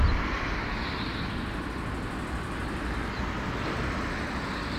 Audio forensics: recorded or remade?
recorded